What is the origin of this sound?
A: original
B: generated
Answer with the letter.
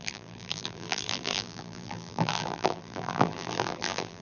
B